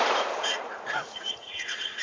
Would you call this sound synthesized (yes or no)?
yes